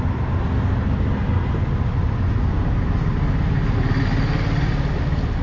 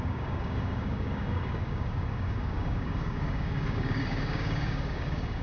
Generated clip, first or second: second